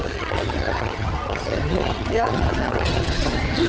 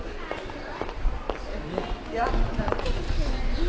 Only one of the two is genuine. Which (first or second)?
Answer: second